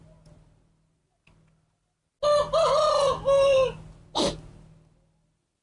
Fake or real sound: real